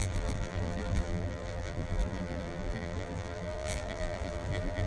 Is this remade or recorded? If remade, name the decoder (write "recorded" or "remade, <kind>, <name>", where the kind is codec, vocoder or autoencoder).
remade, vocoder, BigVGAN v2